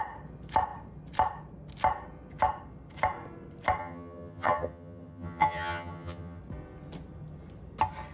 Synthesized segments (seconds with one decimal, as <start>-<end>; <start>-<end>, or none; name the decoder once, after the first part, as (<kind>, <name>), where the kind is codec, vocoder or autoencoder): 3.8-6.4 (vocoder, HiFi-GAN)